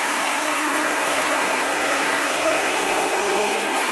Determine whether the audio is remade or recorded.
remade